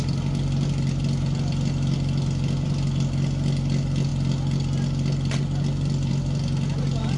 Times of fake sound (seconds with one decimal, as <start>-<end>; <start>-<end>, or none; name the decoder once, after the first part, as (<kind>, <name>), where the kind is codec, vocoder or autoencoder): none